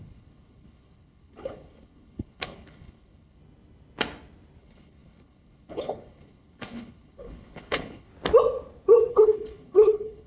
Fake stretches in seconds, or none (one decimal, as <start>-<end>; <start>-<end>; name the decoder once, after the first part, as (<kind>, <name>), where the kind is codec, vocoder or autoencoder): 0.0-3.4 (codec, HILCodec); 4.6-8.1; 9.1-10.3